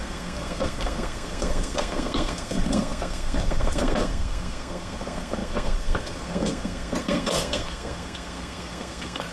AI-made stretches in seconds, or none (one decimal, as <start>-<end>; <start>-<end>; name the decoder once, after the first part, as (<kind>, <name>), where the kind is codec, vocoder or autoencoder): 0.0-9.3 (codec, SNAC)